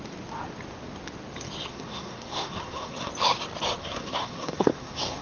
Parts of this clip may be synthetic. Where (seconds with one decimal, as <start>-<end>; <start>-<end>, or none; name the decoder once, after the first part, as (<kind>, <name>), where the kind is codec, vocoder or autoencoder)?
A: 1.7-3.1 (codec, SNAC); 3.8-5.2